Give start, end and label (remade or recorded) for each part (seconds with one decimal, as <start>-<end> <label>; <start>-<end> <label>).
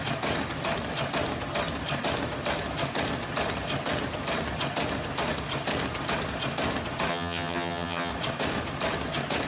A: 0.0-7.1 recorded; 7.1-8.1 remade; 8.1-9.5 recorded